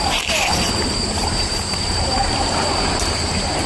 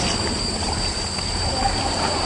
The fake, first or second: first